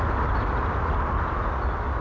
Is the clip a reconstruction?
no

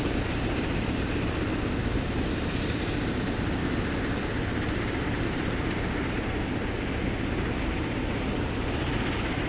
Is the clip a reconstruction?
no